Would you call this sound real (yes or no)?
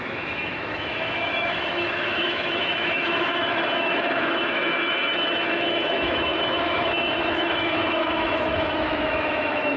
no